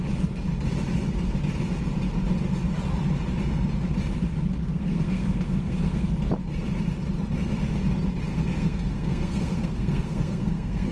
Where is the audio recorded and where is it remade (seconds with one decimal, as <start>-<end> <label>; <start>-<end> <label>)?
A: 0.0-4.6 recorded; 4.6-6.1 remade; 6.1-8.3 recorded; 8.3-10.9 remade